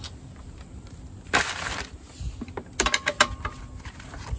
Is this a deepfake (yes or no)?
no